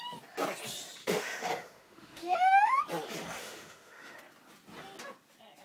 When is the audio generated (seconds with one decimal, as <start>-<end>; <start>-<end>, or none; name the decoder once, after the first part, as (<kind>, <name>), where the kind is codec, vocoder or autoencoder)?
1.0-2.8 (autoencoder, DAC-VAE); 3.4-4.2